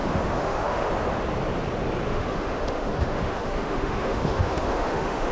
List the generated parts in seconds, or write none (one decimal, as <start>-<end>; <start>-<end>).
0.0-0.9; 2.1-5.3